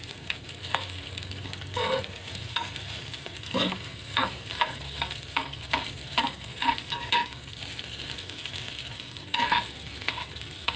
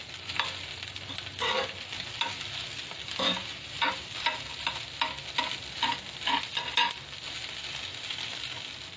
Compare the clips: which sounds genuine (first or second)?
second